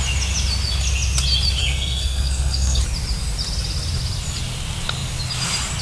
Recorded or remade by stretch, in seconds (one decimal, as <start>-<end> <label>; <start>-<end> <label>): 0.0-1.6 recorded; 1.6-2.8 remade; 2.8-5.8 recorded